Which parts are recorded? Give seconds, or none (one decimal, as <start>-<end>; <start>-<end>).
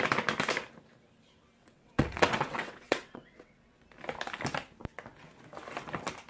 0.0-1.6; 3.8-6.3